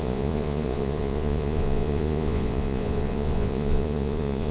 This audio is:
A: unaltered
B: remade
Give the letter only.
B